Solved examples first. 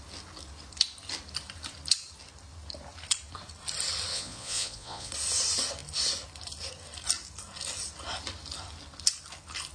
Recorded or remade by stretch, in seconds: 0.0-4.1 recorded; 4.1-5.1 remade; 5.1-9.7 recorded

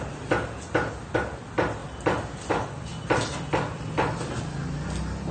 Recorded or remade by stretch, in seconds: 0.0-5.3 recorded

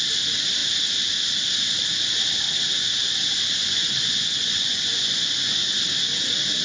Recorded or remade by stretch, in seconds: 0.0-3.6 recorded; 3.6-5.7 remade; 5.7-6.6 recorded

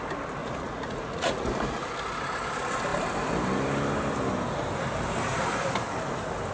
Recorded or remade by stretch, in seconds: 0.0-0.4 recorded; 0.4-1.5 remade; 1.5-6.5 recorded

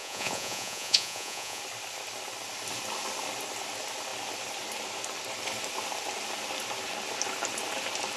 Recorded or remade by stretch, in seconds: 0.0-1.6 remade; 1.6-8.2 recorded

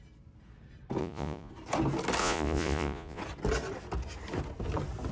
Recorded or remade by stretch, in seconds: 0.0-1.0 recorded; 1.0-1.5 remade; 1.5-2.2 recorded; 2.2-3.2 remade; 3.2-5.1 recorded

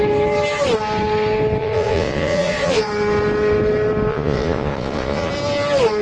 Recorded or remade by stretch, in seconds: 0.0-1.6 recorded; 1.6-2.9 remade; 2.9-4.1 recorded; 4.1-5.3 remade; 5.3-6.0 recorded